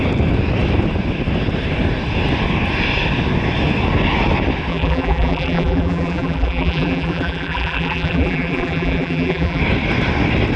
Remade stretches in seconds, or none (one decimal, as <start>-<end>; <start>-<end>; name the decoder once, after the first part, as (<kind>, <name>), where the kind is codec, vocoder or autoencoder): 4.7-9.6 (vocoder, BigVGAN v2)